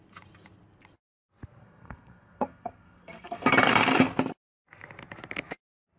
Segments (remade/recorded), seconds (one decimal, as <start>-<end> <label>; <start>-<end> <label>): 0.0-1.6 recorded; 1.6-3.5 remade; 3.5-6.0 recorded

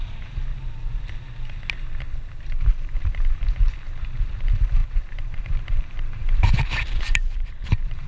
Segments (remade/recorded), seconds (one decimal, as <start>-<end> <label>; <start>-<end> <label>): 0.0-0.5 remade; 0.5-2.6 recorded; 2.6-8.1 remade

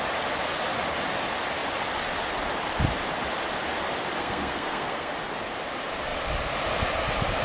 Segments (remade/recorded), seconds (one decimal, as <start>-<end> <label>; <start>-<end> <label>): 0.0-4.2 recorded; 4.2-5.1 remade; 5.1-7.4 recorded

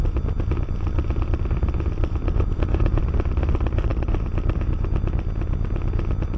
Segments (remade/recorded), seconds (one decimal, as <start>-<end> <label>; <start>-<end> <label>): 0.0-2.2 recorded; 2.2-3.0 remade; 3.0-6.4 recorded

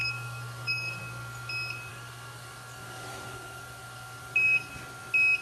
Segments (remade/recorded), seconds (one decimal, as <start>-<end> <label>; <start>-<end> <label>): 0.0-1.0 remade; 1.0-1.9 recorded; 1.9-4.7 remade; 4.7-5.4 recorded

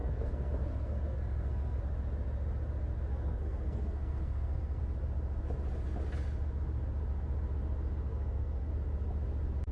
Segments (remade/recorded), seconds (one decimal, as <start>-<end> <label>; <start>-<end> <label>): 0.0-1.8 remade; 1.8-3.1 recorded; 3.1-4.8 remade; 4.8-8.1 recorded; 8.1-8.7 remade; 8.7-9.7 recorded

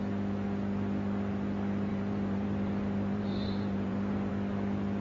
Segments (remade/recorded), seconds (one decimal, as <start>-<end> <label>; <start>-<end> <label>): 0.0-1.9 recorded; 1.9-4.3 remade; 4.3-5.0 recorded